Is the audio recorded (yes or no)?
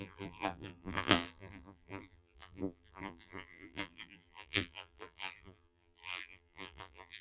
no